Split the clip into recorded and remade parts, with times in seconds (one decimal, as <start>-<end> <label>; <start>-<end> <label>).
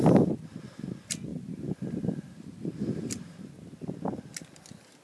0.0-5.0 recorded